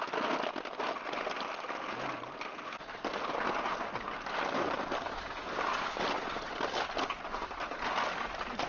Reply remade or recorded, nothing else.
recorded